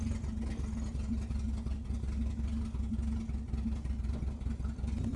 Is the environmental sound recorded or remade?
recorded